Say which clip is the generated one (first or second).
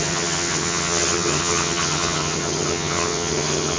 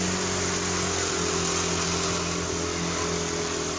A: first